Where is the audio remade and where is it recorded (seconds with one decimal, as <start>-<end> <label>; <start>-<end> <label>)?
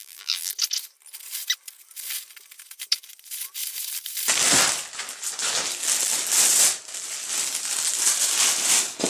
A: 0.0-0.5 remade; 0.5-9.1 recorded